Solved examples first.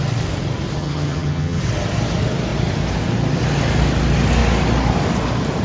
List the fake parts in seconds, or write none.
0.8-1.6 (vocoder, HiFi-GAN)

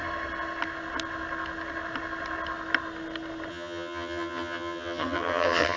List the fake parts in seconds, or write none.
3.5-5.8 (vocoder, HiFi-GAN)

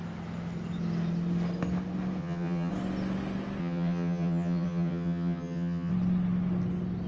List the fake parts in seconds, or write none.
2.2-2.7 (vocoder, HiFi-GAN); 3.6-5.9

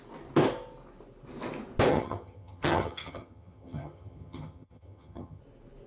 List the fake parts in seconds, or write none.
1.9-5.4 (vocoder, HiFi-GAN)

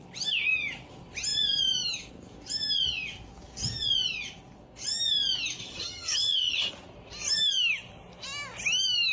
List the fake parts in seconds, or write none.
5.6-6.7 (vocoder, HiFi-GAN)

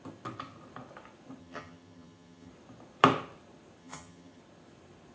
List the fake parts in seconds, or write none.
1.4-2.5 (vocoder, HiFi-GAN); 3.8-4.4

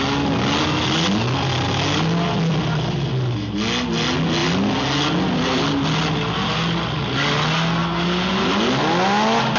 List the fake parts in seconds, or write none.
none

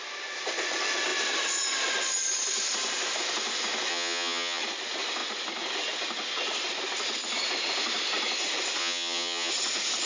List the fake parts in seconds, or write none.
3.9-4.6 (vocoder, HiFi-GAN); 8.8-9.5